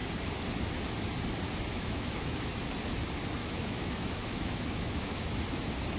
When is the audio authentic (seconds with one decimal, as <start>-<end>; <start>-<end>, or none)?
0.0-1.7; 2.5-3.4; 5.4-6.0